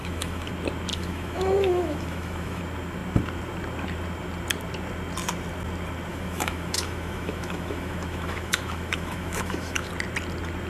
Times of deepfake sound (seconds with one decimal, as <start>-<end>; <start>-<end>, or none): 0.0-0.5; 0.9-2.6; 6.1-9.9